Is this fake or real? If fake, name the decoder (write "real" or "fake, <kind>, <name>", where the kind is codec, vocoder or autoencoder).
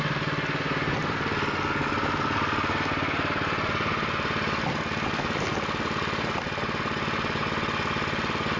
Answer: real